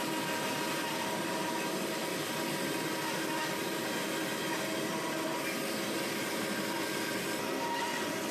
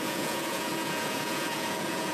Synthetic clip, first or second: second